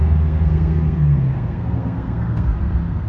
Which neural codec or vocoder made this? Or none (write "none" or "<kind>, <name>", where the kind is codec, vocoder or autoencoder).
codec, SNAC